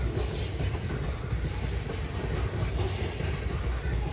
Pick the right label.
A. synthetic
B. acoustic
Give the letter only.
B